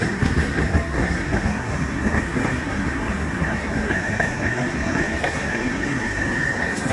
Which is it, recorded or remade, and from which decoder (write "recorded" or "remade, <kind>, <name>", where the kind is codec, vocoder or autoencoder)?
remade, codec, SNAC